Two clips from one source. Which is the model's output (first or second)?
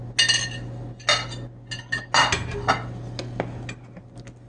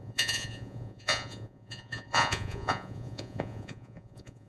second